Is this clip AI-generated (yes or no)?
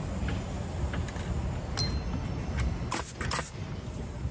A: no